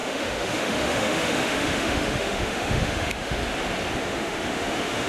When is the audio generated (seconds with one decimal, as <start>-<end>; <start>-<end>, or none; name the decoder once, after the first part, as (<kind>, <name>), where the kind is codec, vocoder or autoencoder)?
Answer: 0.0-3.4 (autoencoder, DAC-VAE); 4.0-5.1